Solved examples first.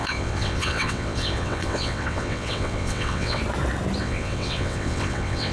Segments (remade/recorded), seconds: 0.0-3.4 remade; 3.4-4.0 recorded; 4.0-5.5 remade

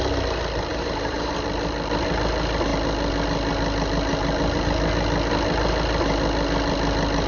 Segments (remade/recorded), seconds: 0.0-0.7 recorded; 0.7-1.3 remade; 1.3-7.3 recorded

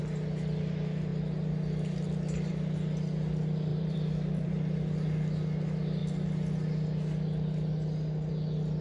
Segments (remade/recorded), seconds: 0.0-3.7 recorded; 3.7-4.5 remade; 4.5-8.8 recorded

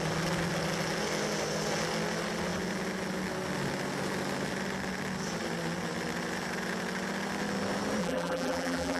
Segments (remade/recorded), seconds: 0.0-8.0 recorded; 8.0-9.0 remade

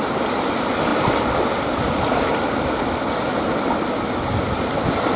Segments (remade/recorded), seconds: 0.0-5.2 recorded

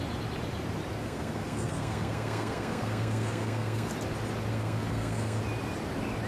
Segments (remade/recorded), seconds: 0.0-1.0 recorded; 1.0-3.9 remade; 3.9-4.5 recorded; 4.5-5.4 remade; 5.4-6.3 recorded

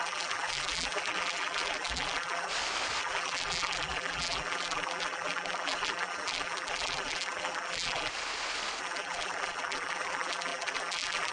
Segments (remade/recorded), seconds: 0.0-2.5 remade; 2.5-3.0 recorded; 3.0-8.1 remade; 8.1-8.8 recorded; 8.8-11.3 remade